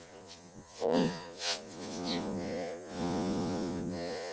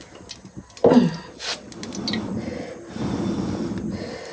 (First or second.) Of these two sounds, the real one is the second